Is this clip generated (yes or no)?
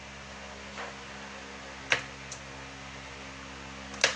no